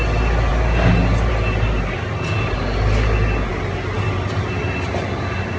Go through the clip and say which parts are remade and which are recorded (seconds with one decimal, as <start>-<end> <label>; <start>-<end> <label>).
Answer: 0.0-5.6 recorded